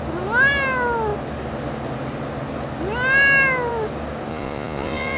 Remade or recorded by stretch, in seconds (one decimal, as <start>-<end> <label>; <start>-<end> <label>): 0.0-4.3 recorded; 4.3-5.2 remade